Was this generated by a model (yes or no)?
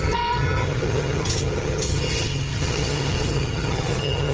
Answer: yes